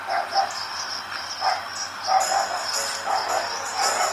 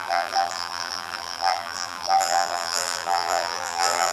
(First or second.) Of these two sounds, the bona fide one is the first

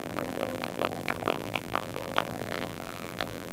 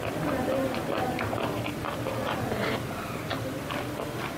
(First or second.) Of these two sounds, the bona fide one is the second